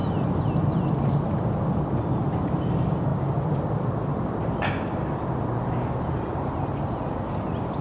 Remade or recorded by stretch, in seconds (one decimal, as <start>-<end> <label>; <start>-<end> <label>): 0.0-7.8 recorded